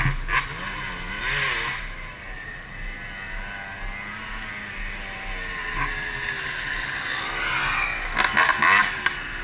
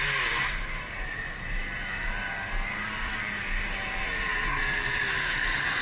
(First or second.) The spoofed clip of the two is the second